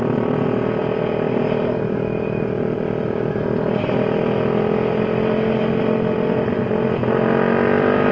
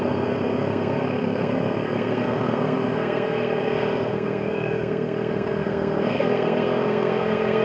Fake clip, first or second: second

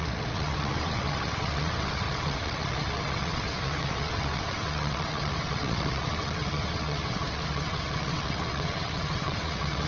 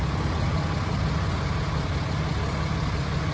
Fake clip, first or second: first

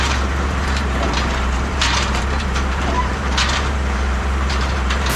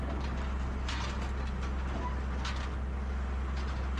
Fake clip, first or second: first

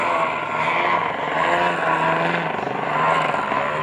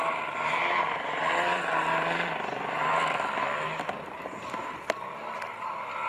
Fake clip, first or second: second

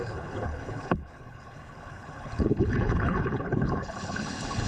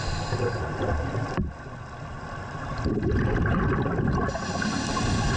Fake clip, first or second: first